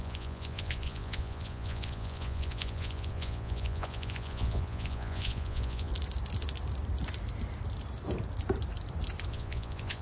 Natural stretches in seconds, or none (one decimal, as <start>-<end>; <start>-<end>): 5.9-9.3